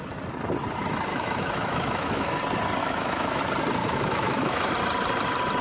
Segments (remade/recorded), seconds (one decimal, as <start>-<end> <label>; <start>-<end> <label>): 0.0-1.1 recorded; 1.1-2.4 remade; 2.4-2.8 recorded; 2.8-3.4 remade; 3.4-3.8 recorded; 3.8-4.7 remade; 4.7-5.6 recorded